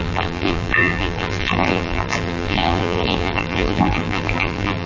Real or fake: fake